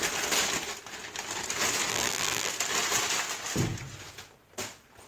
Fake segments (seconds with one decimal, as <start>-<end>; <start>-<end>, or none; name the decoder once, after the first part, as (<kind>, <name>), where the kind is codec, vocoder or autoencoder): 1.9-2.5 (vocoder, BigVGAN v2)